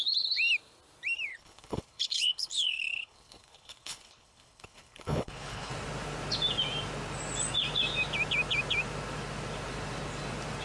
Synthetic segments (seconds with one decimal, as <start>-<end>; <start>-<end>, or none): 1.3-5.7